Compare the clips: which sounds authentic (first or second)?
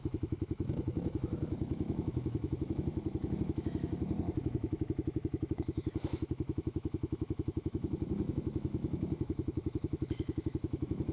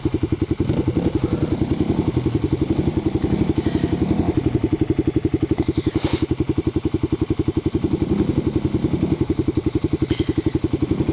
second